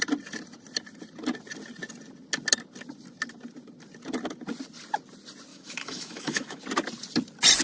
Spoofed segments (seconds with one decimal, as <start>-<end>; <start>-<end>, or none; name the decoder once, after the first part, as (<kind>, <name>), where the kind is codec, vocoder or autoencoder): 5.5-6.6 (autoencoder, DAC-VAE)